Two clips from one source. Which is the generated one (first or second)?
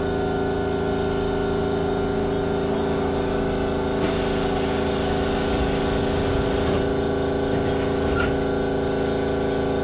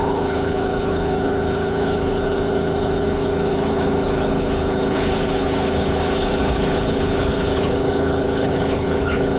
second